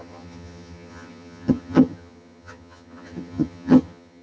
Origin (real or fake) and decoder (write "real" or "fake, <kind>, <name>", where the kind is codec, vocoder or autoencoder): fake, vocoder, HiFi-GAN